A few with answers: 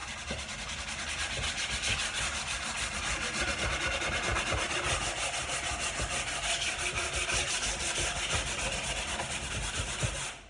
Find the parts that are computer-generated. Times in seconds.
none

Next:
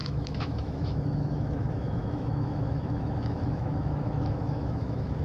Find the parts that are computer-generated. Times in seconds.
0.0-5.2 (autoencoder, DAC-VAE)

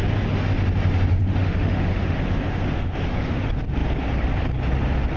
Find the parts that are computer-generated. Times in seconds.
1.1-3.4 (autoencoder, DAC-VAE)

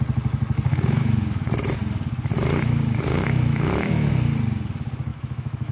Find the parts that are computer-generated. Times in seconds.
0.7-1.5 (autoencoder, DAC-VAE); 3.1-4.1; 5.1-5.7

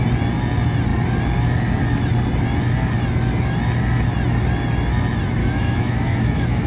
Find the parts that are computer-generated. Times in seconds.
5.4-6.7 (autoencoder, DAC-VAE)